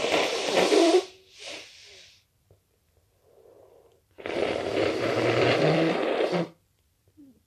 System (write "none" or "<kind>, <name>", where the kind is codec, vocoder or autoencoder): vocoder, BigVGAN v2